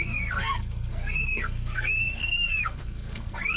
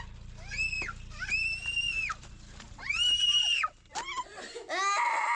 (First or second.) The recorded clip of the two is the second